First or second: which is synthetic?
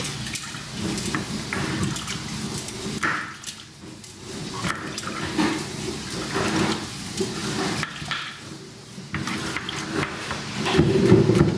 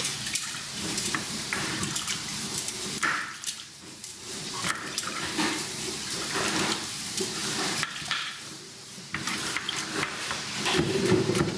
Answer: second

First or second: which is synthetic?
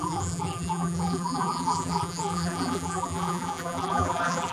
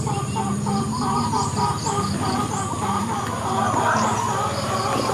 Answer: first